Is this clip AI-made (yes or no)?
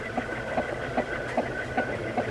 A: no